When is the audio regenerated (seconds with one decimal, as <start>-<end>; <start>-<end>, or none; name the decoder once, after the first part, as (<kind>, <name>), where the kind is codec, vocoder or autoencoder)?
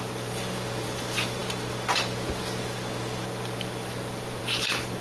none